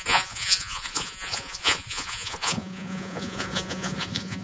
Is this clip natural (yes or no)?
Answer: no